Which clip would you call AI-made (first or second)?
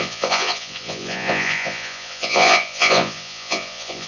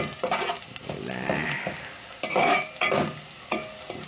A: first